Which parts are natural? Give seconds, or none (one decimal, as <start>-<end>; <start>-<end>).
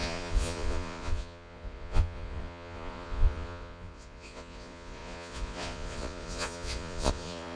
none